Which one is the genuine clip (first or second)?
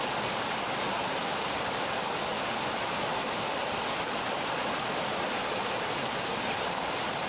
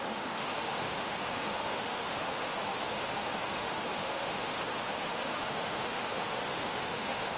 first